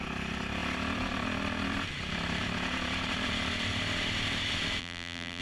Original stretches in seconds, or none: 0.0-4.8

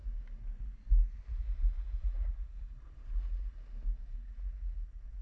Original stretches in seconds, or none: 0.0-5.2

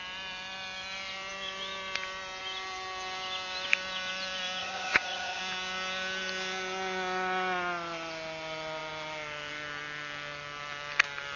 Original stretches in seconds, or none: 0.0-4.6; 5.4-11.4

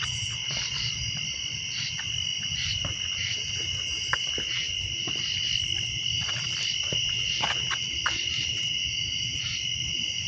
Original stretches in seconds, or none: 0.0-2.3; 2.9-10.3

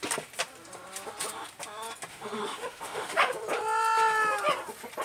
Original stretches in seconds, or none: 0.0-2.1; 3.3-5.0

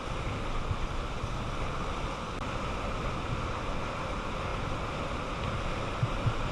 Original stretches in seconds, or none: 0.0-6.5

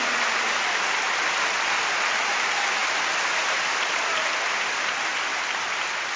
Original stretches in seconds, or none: 0.0-6.2

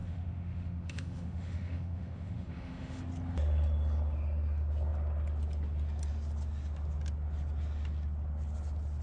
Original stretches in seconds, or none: 3.0-9.0